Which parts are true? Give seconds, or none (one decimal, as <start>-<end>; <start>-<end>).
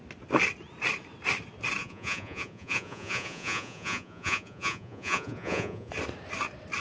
0.0-1.8; 5.9-6.8